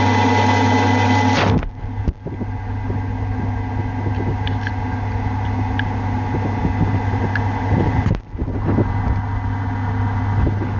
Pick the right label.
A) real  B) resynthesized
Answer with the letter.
A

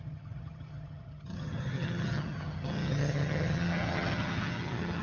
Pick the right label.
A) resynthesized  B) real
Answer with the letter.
A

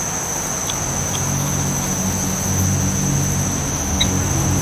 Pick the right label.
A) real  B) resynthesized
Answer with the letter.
A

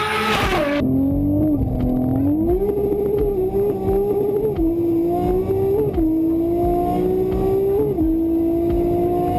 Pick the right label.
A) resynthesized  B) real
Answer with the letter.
B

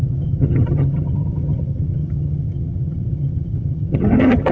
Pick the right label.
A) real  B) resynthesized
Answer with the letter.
B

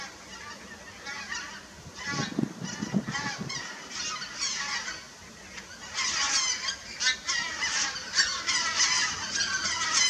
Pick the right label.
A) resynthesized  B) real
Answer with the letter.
B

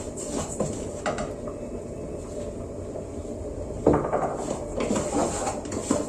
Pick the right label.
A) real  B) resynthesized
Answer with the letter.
A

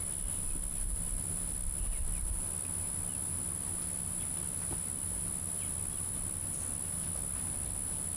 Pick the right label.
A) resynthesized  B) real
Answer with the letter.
B